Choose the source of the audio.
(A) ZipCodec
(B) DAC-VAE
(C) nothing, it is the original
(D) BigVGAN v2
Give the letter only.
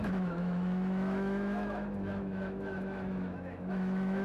B